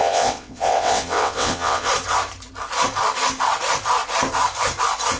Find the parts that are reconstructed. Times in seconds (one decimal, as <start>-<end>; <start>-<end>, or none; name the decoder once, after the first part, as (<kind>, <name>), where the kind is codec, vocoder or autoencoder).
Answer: 0.0-1.9 (vocoder, WaveNeXt)